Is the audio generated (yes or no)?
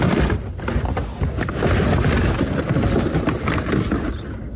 no